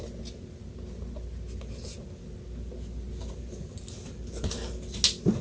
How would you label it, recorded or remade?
recorded